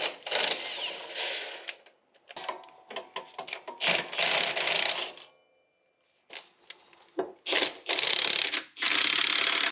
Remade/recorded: recorded